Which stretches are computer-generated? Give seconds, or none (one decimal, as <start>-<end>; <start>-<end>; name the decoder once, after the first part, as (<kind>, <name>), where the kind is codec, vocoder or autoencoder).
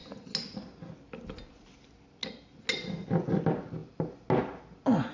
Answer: none